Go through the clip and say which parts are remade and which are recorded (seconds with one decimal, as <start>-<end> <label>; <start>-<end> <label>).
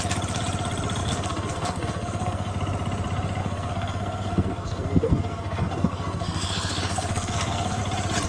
0.0-1.0 recorded; 1.0-2.5 remade; 2.5-3.4 recorded; 3.4-7.8 remade; 7.8-8.3 recorded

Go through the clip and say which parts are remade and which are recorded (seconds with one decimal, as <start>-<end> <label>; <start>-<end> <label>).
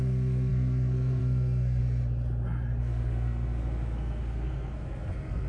0.0-1.8 remade; 1.8-2.8 recorded; 2.8-5.5 remade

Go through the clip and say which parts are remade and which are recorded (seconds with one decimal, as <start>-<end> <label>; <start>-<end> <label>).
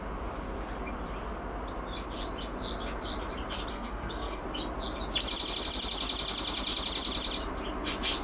0.0-3.7 recorded; 3.7-4.4 remade; 4.4-8.2 recorded